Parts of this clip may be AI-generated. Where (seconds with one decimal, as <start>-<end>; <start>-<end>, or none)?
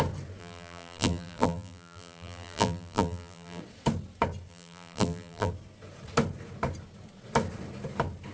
0.4-3.6; 4.5-5.5